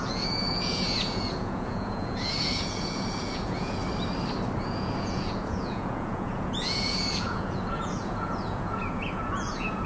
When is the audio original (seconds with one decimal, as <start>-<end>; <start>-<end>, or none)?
3.8-4.6